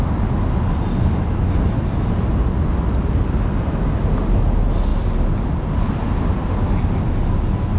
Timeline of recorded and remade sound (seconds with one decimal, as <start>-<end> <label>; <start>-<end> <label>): 0.0-7.8 recorded